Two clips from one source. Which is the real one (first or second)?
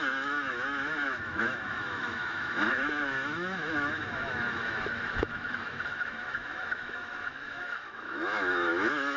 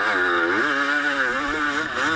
second